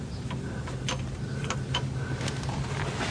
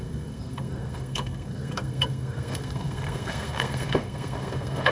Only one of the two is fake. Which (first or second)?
second